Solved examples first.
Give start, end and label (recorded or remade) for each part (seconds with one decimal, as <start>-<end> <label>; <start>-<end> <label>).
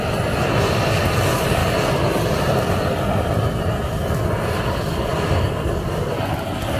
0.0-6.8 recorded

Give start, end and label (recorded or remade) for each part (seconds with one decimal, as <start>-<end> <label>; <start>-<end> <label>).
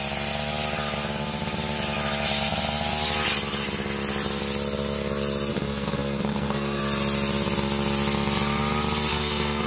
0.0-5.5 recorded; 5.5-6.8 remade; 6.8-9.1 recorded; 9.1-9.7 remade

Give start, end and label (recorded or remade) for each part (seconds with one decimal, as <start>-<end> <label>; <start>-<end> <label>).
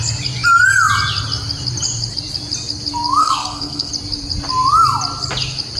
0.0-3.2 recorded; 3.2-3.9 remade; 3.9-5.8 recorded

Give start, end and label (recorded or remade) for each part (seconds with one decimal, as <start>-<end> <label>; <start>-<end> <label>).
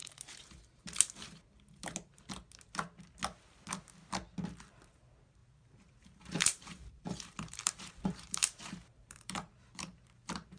0.0-5.4 recorded; 5.4-10.6 remade